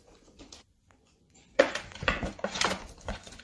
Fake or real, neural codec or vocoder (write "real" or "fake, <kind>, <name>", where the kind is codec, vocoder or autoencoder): fake, vocoder, Vocos